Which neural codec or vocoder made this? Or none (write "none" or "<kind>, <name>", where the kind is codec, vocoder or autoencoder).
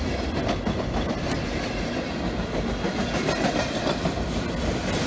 none